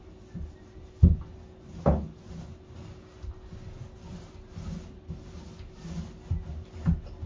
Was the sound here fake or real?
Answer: real